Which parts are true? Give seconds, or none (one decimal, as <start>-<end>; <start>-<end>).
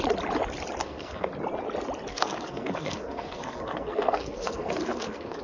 0.0-0.8; 1.3-2.1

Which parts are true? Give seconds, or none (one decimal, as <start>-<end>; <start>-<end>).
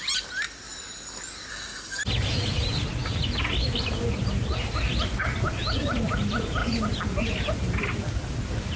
0.0-1.5; 2.0-8.8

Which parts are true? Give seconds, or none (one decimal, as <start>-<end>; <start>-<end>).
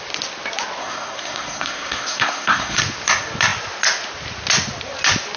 0.0-0.8; 2.8-5.4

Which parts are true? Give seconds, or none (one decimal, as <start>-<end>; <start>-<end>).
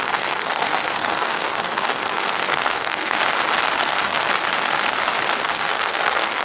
3.2-3.8; 4.3-5.4